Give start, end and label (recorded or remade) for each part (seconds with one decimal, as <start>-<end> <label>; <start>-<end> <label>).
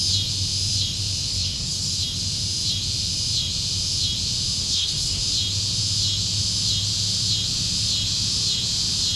0.0-1.3 recorded; 1.3-2.0 remade; 2.0-4.6 recorded; 4.6-5.2 remade; 5.2-9.2 recorded